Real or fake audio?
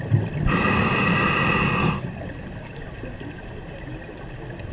real